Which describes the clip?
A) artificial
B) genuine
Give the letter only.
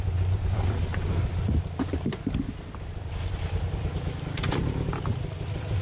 B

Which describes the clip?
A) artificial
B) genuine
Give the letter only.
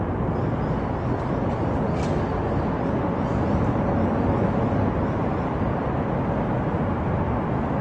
B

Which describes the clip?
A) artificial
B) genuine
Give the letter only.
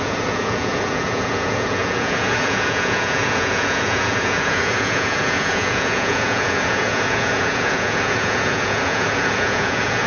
A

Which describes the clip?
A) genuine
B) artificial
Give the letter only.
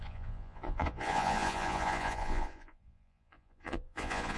B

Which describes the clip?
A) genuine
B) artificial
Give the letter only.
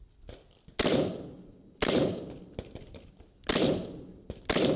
A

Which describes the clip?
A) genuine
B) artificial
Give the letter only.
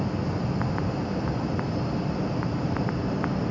A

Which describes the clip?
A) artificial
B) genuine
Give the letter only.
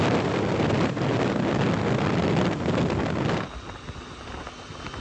B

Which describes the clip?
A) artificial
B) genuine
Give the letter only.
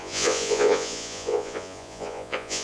A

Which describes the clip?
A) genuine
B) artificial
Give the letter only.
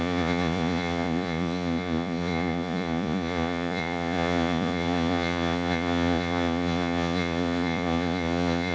B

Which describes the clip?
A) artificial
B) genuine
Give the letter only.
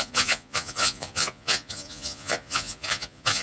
A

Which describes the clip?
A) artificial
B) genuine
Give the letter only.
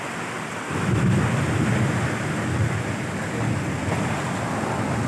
B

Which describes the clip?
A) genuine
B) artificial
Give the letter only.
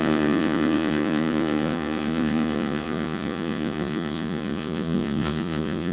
B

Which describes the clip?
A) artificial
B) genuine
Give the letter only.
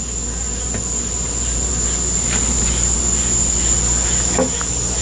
B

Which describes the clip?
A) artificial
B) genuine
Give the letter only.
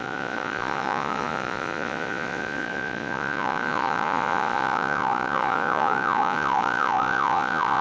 A